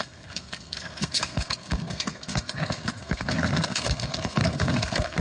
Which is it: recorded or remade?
remade